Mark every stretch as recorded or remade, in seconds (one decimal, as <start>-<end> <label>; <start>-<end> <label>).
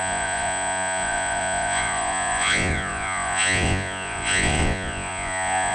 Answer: 0.0-5.7 remade